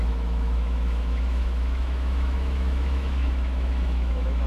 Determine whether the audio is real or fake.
fake